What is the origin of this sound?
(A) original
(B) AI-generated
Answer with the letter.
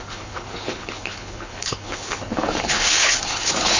B